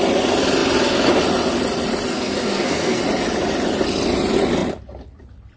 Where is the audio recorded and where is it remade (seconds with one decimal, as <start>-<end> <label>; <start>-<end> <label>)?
0.0-2.1 recorded; 2.1-3.0 remade; 3.0-5.6 recorded